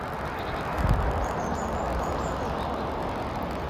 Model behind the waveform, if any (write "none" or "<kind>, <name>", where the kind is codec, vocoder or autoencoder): none